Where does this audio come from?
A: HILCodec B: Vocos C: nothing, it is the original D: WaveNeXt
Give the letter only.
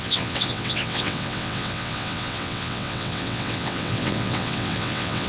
D